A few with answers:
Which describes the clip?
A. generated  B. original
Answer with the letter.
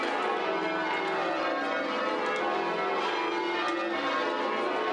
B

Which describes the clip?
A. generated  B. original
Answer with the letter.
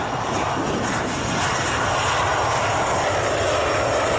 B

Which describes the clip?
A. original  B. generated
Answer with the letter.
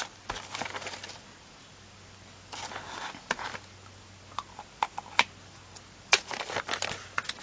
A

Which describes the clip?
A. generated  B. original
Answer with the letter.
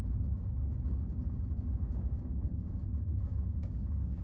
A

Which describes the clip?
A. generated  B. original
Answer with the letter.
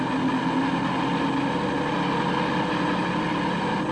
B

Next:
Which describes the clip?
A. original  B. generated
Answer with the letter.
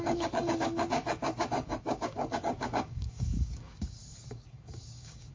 B